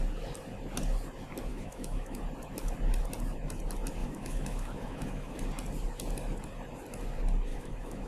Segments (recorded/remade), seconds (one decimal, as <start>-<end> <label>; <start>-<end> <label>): 0.0-1.5 recorded; 1.5-2.2 remade; 2.2-4.0 recorded; 4.0-5.4 remade; 5.4-7.5 recorded; 7.5-8.1 remade